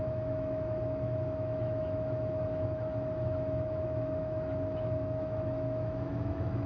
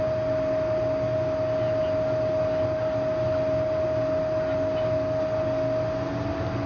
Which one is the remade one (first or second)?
first